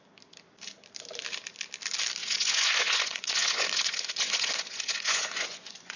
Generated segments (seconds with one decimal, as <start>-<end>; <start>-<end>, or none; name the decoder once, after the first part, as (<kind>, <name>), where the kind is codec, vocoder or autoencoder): 2.2-6.0 (vocoder, Vocos)